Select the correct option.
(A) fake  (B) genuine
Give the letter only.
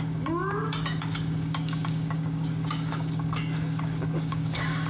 A